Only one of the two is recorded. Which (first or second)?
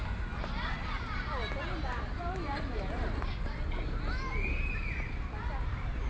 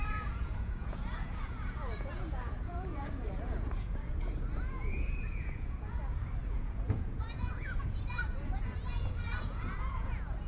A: first